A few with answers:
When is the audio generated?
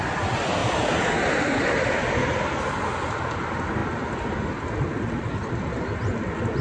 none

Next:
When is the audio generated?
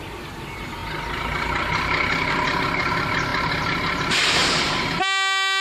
none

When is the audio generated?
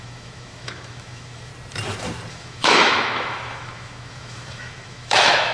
0.0-1.5 (autoencoder, DAC-VAE); 2.3-5.5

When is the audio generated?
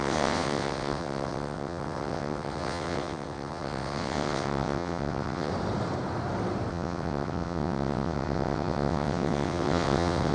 0.0-5.5 (vocoder, WaveNeXt); 6.7-10.3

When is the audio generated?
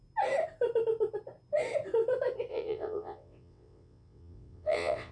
2.5-5.1 (vocoder, WaveNeXt)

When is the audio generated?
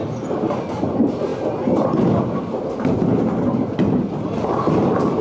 none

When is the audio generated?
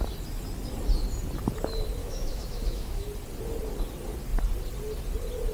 2.0-3.1 (autoencoder, DAC-VAE)